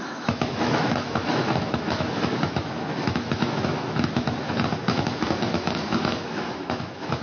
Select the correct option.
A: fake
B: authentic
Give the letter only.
A